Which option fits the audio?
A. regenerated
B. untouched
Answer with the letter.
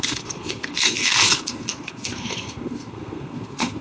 A